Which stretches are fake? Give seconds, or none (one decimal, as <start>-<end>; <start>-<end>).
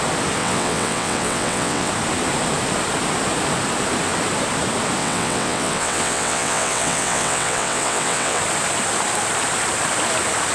0.4-1.9; 5.0-8.4